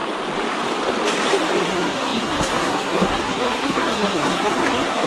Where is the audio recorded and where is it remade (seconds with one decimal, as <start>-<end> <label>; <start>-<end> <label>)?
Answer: 0.0-1.7 recorded; 1.7-5.1 remade